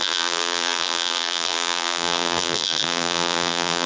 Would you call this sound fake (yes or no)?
yes